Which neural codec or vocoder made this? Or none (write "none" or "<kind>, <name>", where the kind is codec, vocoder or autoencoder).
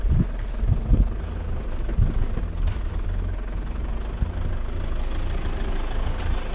none